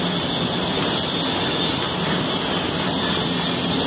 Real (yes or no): no